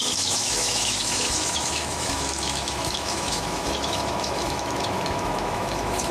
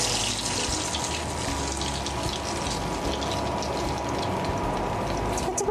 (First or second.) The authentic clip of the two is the second